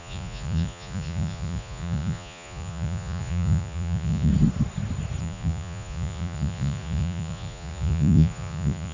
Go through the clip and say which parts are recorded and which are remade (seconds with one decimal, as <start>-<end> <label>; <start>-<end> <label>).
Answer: 0.0-4.3 remade; 4.3-5.2 recorded; 5.2-8.9 remade